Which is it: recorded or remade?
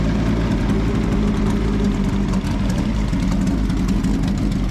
recorded